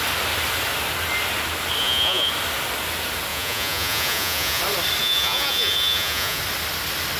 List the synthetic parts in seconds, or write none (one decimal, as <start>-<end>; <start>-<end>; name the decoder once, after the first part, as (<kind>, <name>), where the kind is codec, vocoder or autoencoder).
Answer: 1.8-2.3 (vocoder, Vocos); 3.3-4.6; 5.0-6.4